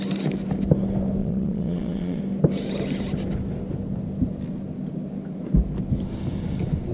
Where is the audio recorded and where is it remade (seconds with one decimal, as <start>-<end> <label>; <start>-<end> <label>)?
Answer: 0.0-1.2 recorded; 1.2-2.2 remade; 2.2-6.9 recorded